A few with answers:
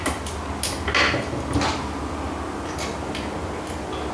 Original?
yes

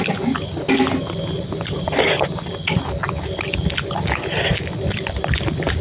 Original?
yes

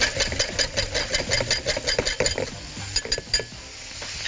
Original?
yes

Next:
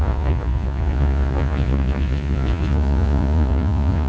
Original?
no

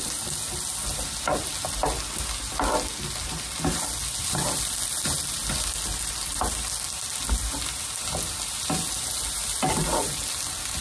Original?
yes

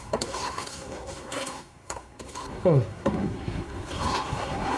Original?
no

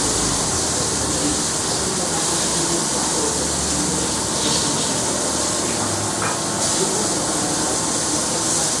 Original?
yes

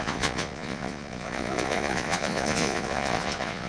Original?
no